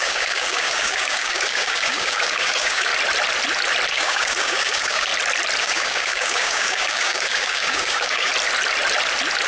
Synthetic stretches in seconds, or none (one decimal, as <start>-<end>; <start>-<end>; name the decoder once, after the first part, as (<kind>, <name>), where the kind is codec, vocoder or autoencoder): 0.0-2.9 (codec, DAC); 3.9-5.1; 5.6-8.3